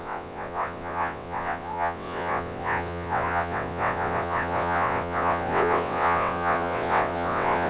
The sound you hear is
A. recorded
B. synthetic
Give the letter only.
B